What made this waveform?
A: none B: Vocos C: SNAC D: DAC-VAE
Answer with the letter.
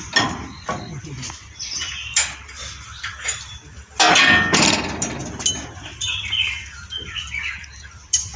A